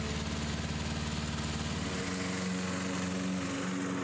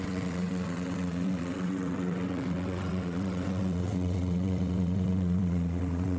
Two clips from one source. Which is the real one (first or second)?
first